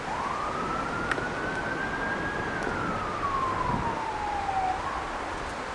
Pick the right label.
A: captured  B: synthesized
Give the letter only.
A